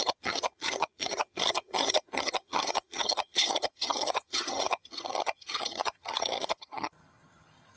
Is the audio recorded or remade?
remade